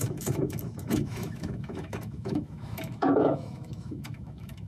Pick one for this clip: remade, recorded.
remade